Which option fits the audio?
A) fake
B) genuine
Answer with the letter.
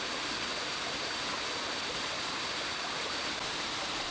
B